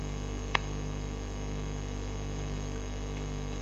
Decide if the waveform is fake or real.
fake